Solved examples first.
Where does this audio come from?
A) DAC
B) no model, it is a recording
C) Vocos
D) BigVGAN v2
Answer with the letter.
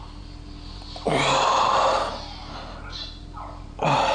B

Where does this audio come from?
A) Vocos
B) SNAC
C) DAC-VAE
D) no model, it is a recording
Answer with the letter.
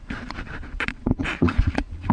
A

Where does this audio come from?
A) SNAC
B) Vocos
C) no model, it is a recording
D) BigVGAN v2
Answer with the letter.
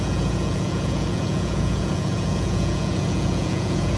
B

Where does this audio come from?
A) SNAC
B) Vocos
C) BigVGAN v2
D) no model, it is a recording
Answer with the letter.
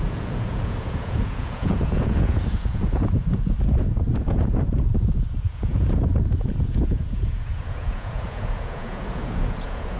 B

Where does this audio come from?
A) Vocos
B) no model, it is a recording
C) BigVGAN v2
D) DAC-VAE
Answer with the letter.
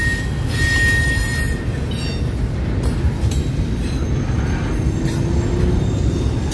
B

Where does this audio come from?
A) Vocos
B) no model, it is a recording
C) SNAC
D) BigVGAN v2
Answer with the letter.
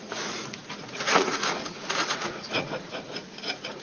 A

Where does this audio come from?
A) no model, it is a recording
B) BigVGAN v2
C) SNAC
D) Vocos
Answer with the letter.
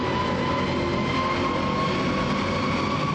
A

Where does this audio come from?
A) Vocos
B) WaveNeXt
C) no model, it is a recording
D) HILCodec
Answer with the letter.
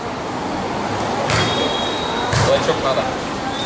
C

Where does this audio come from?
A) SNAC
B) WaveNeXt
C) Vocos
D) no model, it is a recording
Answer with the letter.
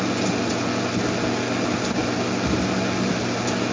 D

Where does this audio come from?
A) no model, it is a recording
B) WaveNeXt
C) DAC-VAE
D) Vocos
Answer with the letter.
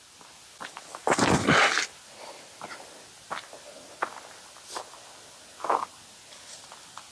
A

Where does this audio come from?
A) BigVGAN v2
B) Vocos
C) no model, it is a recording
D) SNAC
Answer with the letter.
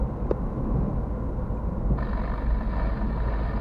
C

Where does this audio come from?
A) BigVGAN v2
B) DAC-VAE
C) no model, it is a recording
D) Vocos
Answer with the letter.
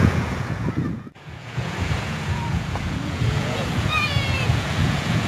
D